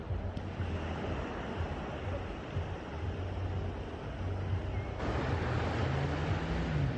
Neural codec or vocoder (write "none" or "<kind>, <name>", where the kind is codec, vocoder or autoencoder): none